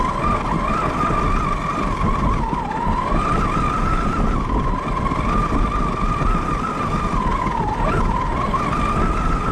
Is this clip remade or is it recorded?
recorded